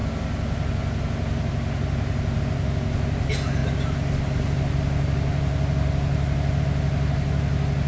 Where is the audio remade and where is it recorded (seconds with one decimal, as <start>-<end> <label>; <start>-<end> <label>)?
0.0-7.9 recorded